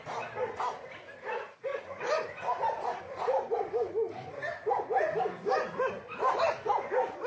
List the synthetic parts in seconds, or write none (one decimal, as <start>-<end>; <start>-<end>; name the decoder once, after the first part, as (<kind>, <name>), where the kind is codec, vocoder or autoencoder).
none